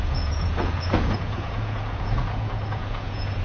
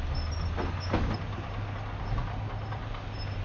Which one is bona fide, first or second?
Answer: second